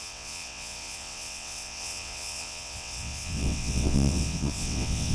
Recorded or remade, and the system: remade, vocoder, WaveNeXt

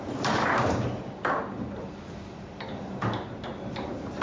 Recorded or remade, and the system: recorded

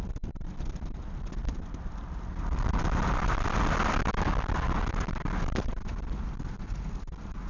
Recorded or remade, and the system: recorded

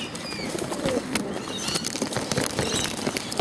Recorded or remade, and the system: recorded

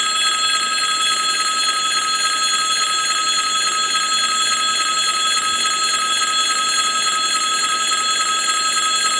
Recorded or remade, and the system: recorded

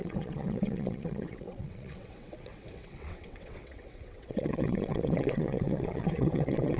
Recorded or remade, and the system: remade, vocoder, WaveNeXt